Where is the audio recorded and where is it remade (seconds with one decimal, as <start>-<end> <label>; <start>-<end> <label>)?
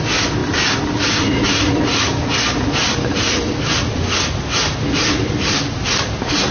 0.0-6.5 recorded